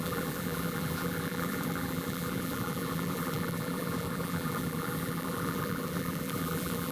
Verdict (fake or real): fake